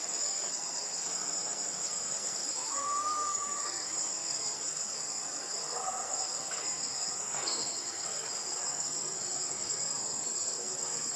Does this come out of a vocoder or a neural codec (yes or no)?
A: yes